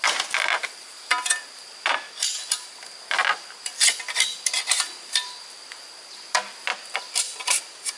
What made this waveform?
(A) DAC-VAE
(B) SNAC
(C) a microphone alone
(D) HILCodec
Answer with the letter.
C